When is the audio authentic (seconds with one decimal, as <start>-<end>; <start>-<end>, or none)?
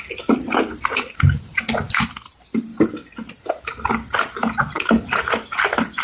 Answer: 0.0-6.0